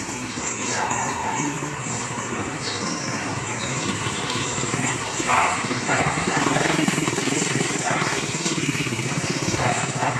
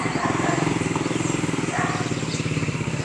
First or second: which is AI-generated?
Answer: first